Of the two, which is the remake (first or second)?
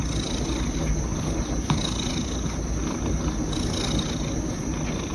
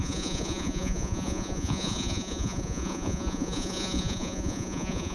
second